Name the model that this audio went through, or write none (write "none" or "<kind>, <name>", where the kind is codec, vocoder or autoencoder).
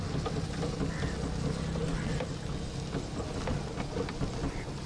none